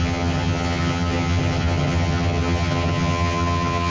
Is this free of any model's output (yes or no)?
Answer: no